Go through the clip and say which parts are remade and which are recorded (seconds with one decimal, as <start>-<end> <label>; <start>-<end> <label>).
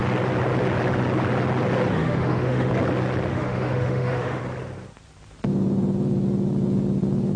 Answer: 0.0-1.9 recorded; 1.9-2.7 remade; 2.7-3.3 recorded; 3.3-4.4 remade; 4.4-7.4 recorded